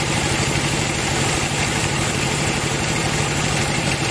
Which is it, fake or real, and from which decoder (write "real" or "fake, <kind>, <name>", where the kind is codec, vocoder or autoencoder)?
fake, vocoder, BigVGAN v2